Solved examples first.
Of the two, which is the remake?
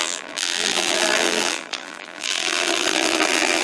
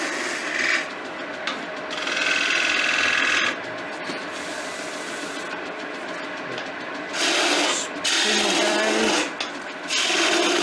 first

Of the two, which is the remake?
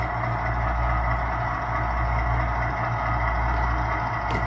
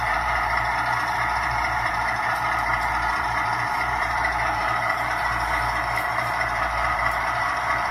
second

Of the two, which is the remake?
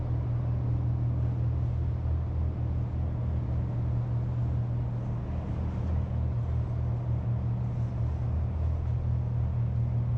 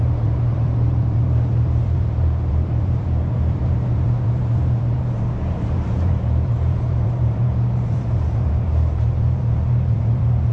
second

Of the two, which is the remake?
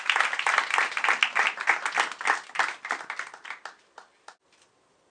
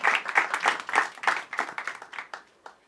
second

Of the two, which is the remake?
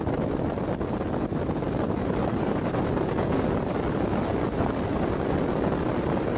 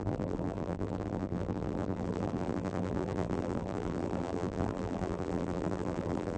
second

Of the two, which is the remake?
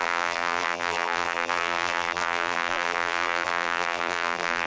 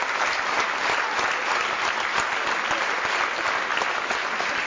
first